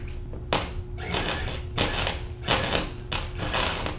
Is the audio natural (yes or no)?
yes